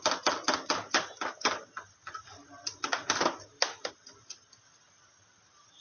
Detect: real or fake real